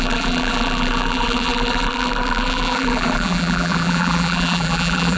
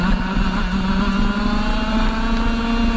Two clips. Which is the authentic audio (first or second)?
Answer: second